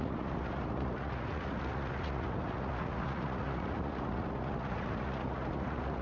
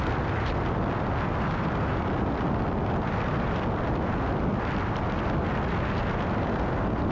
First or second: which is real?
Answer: second